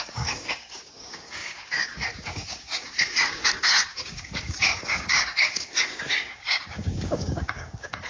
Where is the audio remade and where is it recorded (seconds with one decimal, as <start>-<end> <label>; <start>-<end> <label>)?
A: 0.0-8.1 remade